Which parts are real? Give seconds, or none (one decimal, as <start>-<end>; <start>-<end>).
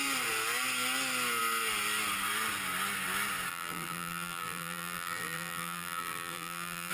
0.0-3.5